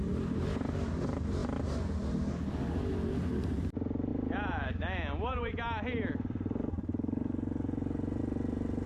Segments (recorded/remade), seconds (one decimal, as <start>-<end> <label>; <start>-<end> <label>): 0.0-8.9 recorded